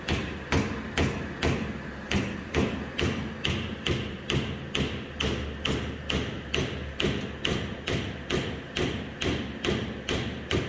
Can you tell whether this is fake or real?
real